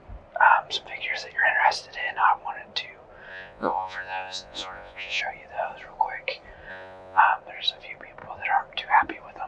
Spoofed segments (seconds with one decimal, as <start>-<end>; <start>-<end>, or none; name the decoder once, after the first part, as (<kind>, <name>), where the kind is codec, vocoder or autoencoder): 3.3-5.2 (vocoder, Vocos); 6.7-7.2